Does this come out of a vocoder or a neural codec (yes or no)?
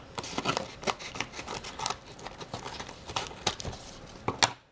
no